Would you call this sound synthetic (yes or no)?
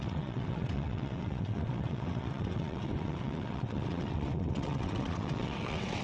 yes